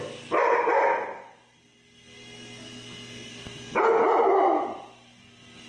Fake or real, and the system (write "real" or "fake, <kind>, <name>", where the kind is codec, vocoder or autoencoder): real